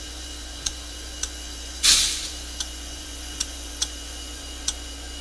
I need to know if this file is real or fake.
fake